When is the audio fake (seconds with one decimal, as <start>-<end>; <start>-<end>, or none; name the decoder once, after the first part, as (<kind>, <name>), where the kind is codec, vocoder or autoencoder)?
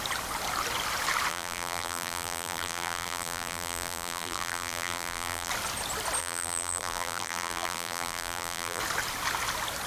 1.3-5.5 (vocoder, BigVGAN v2); 6.2-8.8